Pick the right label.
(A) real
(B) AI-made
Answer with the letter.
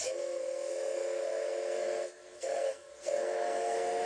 B